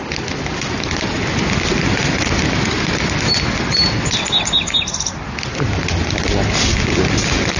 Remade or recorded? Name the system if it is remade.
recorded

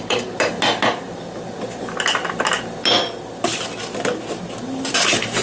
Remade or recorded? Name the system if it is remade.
recorded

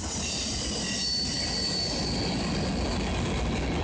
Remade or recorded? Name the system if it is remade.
recorded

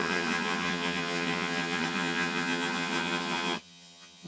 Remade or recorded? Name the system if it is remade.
remade, vocoder, HiFi-GAN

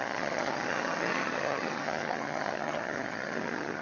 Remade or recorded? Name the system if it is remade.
remade, vocoder, HiFi-GAN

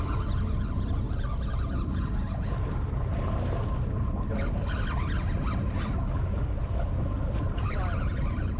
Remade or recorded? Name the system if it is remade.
recorded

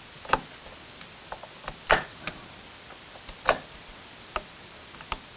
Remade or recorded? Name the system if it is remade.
recorded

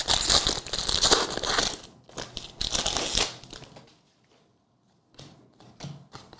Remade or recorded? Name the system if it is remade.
recorded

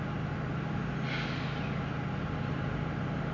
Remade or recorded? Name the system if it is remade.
recorded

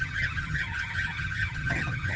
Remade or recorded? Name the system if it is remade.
remade, vocoder, HiFi-GAN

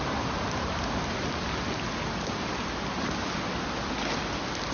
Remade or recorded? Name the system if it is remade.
recorded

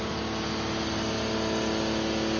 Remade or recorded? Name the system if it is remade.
recorded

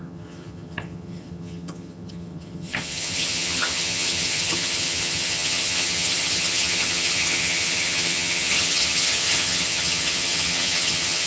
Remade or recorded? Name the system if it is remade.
remade, vocoder, HiFi-GAN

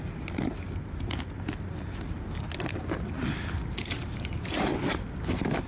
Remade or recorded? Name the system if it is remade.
recorded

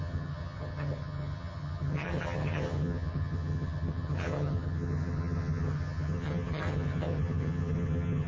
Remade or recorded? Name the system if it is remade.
remade, vocoder, HiFi-GAN